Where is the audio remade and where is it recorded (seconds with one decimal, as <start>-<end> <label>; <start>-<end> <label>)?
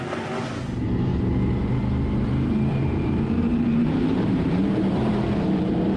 0.0-2.7 recorded; 2.7-3.4 remade; 3.4-3.8 recorded; 3.8-5.6 remade; 5.6-6.0 recorded